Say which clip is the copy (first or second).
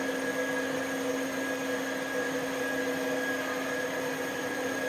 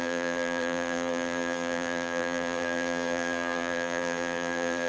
second